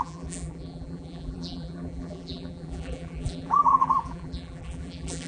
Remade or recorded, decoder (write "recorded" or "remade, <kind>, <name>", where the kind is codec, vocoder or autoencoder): remade, vocoder, BigVGAN v2